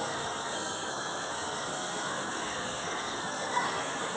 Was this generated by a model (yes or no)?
yes